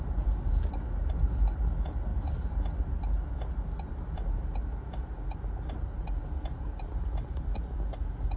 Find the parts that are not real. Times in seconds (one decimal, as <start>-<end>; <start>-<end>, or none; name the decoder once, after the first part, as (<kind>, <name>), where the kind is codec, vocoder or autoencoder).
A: none